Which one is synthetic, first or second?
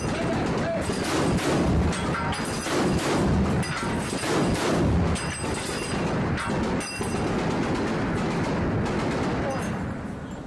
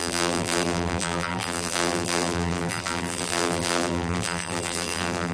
second